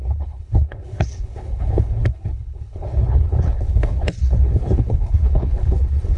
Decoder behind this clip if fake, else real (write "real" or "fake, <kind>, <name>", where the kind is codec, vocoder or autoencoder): fake, codec, HILCodec